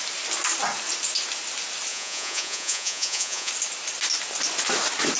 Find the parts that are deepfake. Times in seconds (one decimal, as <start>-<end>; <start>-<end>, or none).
1.9-3.5